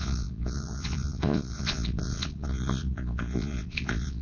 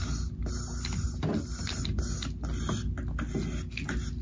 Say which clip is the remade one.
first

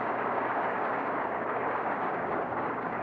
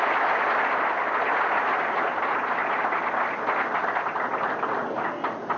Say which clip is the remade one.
first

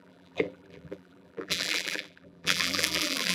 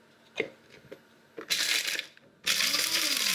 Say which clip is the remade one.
first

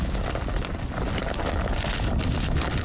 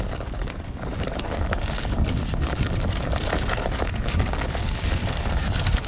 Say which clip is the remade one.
second